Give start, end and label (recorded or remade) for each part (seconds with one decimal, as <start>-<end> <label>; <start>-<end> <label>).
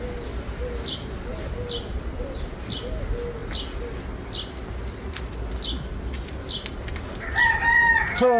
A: 0.0-8.4 recorded